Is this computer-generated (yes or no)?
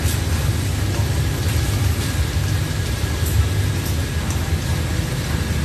no